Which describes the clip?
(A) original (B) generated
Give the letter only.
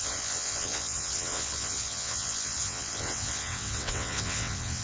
B